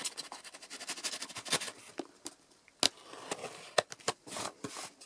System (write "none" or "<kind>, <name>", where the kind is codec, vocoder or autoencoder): none